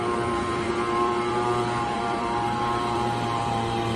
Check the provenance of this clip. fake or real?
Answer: fake